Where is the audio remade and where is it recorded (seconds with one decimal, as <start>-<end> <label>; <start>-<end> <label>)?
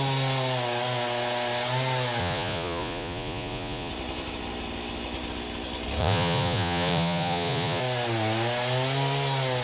0.0-2.2 recorded; 2.2-3.9 remade; 3.9-6.0 recorded; 6.0-7.8 remade; 7.8-9.6 recorded